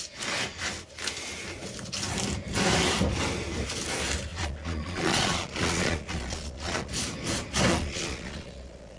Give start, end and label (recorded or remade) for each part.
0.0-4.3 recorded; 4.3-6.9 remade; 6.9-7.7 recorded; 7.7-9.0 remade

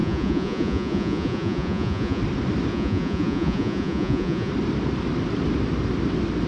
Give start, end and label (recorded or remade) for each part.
0.0-2.2 remade; 2.2-2.7 recorded; 2.7-4.5 remade; 4.5-6.5 recorded

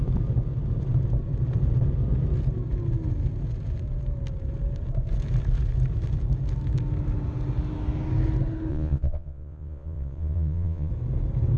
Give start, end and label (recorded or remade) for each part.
0.0-8.7 recorded; 8.7-10.9 remade; 10.9-11.6 recorded